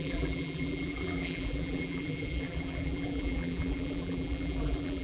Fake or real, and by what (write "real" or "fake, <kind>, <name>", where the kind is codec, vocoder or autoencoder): fake, vocoder, BigVGAN v2